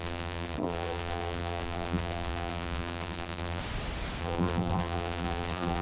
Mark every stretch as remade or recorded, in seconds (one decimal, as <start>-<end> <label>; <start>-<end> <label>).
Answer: 0.0-3.6 remade; 3.6-4.2 recorded; 4.2-5.8 remade

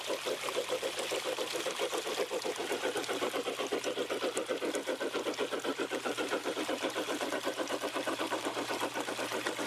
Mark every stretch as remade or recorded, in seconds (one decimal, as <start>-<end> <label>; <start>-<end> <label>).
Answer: 0.0-2.6 recorded; 2.6-3.4 remade; 3.4-5.7 recorded; 5.7-9.1 remade; 9.1-9.7 recorded

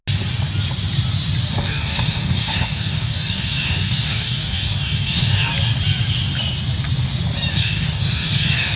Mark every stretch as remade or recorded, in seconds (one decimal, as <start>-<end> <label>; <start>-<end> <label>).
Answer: 0.0-1.5 recorded; 1.5-5.5 remade; 5.5-7.5 recorded; 7.5-8.8 remade

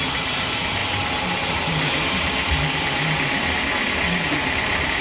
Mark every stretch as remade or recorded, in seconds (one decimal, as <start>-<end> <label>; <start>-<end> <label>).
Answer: 0.0-5.0 recorded

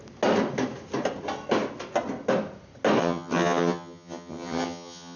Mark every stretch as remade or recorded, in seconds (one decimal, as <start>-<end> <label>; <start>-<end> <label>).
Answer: 0.0-3.0 recorded; 3.0-5.2 remade

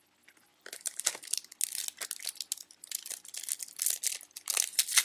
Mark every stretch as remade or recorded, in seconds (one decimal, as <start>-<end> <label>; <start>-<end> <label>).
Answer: 0.0-5.0 recorded

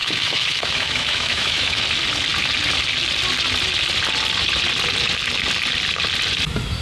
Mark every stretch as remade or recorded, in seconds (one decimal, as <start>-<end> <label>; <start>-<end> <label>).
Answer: 0.0-1.8 remade; 1.8-6.8 recorded